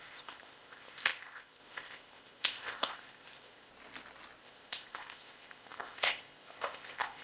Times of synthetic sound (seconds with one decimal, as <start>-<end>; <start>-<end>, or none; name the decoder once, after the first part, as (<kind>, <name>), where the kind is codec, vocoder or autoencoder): 0.0-3.7 (codec, ZipCodec); 4.4-7.2